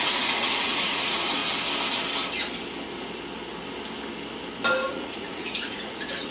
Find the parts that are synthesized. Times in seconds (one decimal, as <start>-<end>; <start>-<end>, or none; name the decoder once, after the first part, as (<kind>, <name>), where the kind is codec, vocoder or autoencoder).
0.0-1.4 (vocoder, Vocos); 4.9-6.3